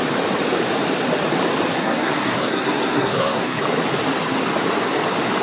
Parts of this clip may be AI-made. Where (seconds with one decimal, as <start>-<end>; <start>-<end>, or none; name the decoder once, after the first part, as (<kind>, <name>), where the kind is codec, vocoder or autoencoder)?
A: 1.8-3.6 (codec, SNAC)